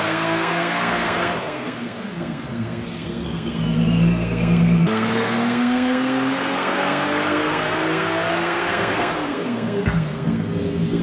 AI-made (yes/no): yes